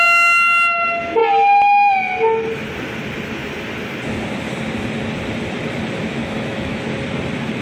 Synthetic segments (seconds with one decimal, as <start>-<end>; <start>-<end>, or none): 6.2-6.8